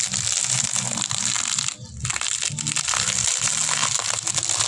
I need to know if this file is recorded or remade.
recorded